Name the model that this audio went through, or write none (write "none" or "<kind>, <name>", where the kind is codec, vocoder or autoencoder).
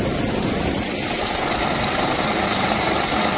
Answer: none